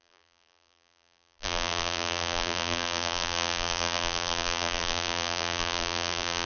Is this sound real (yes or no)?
no